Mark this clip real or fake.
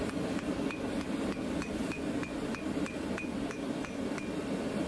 fake